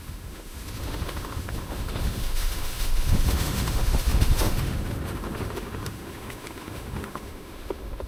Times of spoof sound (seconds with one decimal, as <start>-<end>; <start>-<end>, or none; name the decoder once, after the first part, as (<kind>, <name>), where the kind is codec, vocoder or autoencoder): 0.0-8.1 (autoencoder, DAC-VAE)